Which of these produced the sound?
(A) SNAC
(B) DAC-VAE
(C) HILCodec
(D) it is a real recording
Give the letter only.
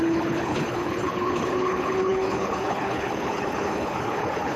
C